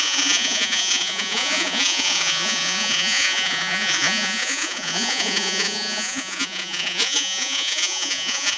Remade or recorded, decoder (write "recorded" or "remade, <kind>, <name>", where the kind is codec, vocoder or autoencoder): remade, vocoder, Vocos